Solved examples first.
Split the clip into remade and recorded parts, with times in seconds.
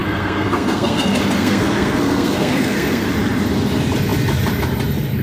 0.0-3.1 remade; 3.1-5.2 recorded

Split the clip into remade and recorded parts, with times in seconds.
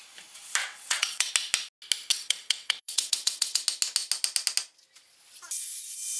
0.0-0.6 recorded; 0.6-1.3 remade; 1.3-2.1 recorded; 2.1-3.6 remade; 3.6-6.2 recorded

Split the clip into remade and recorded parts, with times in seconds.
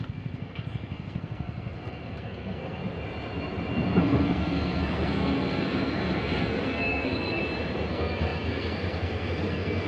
0.0-2.8 remade; 2.8-4.0 recorded; 4.0-7.4 remade; 7.4-7.9 recorded; 7.9-9.9 remade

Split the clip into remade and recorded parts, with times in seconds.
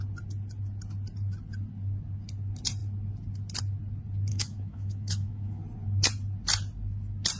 0.0-4.3 recorded; 4.3-5.6 remade; 5.6-7.4 recorded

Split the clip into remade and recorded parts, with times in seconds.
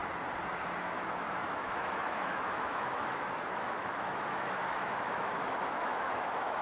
0.0-0.8 recorded; 0.8-6.6 remade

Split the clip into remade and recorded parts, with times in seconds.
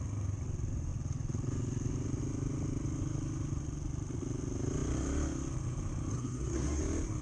0.0-6.1 recorded; 6.1-6.8 remade; 6.8-7.2 recorded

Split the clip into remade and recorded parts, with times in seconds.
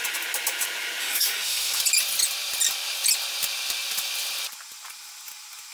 0.0-1.0 recorded; 1.0-1.8 remade; 1.8-5.7 recorded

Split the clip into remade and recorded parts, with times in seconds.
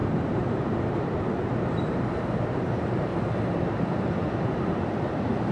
0.0-3.1 remade; 3.1-3.8 recorded; 3.8-5.5 remade